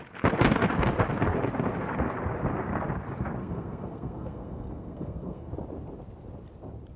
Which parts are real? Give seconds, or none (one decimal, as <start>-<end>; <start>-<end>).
0.0-3.4; 5.5-7.0